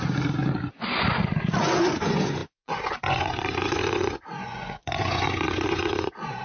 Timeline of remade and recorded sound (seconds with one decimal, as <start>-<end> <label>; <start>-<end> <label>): 0.0-1.6 recorded; 1.6-6.4 remade